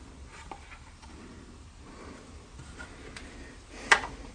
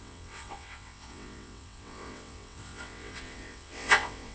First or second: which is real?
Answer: first